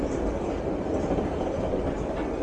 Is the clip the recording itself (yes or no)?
yes